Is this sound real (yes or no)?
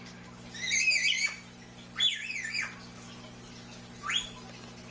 yes